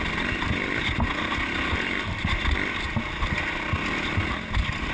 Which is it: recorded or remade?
recorded